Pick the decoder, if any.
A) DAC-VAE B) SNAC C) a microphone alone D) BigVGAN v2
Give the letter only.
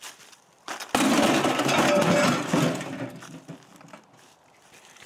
C